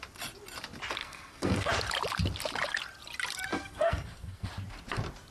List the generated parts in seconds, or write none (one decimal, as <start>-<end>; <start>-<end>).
1.0-1.7; 3.5-4.5